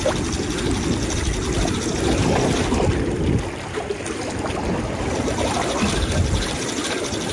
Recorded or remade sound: recorded